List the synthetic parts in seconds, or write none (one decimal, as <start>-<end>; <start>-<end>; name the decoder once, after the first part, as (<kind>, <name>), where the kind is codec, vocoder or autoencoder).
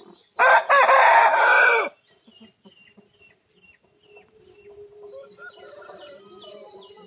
none